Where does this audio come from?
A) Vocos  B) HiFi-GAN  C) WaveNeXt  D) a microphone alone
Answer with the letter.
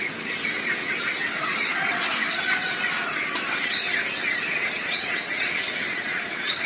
C